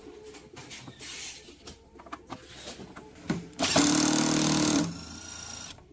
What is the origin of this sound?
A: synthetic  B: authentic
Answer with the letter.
B